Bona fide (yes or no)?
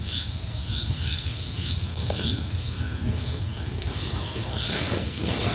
no